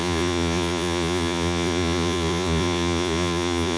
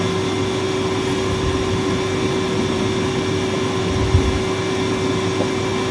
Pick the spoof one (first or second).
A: first